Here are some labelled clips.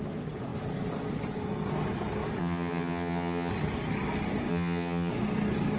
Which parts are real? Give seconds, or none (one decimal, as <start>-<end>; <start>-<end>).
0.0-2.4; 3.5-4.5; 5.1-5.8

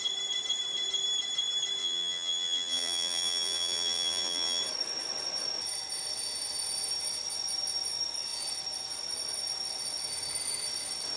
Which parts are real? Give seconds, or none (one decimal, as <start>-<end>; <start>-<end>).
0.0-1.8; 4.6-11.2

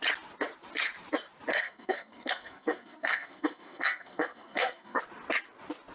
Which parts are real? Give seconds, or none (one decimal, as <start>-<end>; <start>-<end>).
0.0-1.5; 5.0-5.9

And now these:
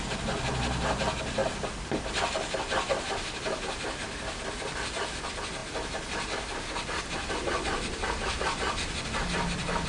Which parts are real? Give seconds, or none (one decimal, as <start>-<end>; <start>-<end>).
0.0-9.9

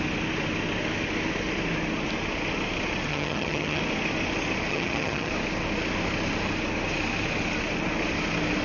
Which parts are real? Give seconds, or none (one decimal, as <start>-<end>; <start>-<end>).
0.0-3.1; 3.8-4.7; 5.3-8.6

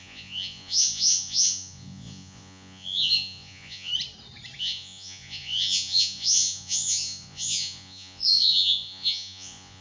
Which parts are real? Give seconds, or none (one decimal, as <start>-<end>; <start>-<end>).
3.9-4.6

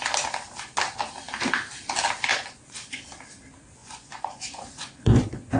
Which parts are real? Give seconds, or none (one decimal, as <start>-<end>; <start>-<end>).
0.0-2.3; 3.0-3.8